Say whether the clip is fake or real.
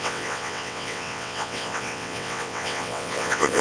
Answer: fake